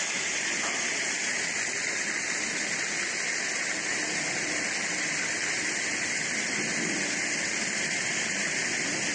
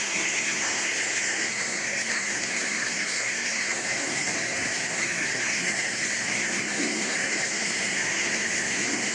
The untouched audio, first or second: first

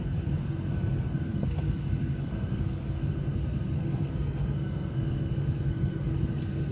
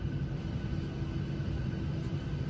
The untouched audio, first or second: second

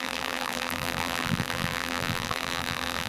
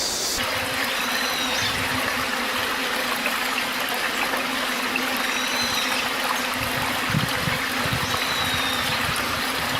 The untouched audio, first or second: second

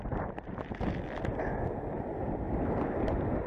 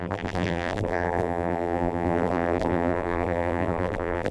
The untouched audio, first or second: first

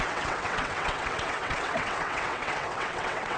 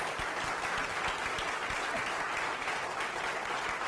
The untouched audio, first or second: second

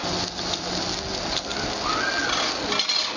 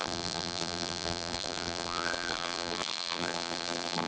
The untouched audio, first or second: first